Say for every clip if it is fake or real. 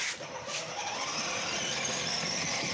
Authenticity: real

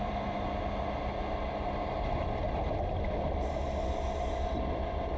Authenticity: real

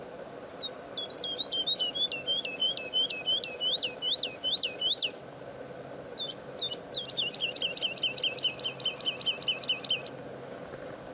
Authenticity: real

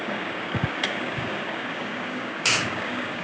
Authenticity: fake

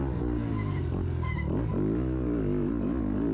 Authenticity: real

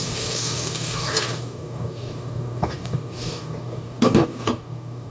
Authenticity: fake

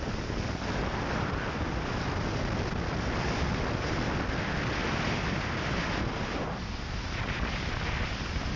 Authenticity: real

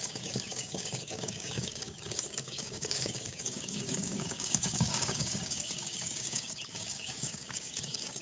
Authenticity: fake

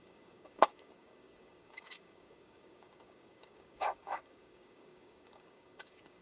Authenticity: fake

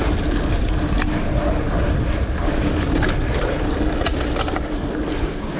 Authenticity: real